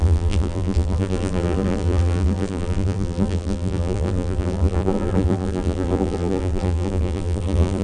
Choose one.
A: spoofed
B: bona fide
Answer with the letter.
A